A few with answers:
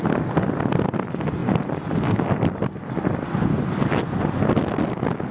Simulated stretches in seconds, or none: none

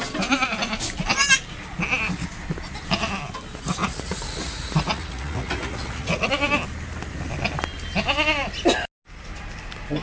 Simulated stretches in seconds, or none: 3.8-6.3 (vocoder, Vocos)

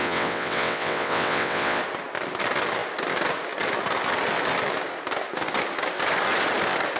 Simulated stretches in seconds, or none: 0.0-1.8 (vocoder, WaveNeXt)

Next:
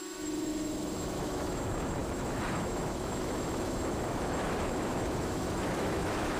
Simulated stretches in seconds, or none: 0.0-6.4 (autoencoder, DAC-VAE)

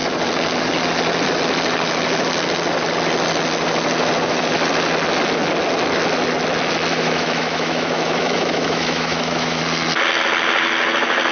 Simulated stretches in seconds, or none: 6.9-9.6 (autoencoder, DAC-VAE)